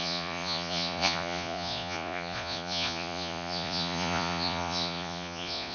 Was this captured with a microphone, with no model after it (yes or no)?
no